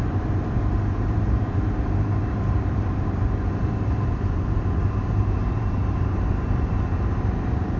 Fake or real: fake